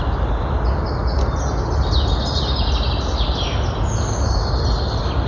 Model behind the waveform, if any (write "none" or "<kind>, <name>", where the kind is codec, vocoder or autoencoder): none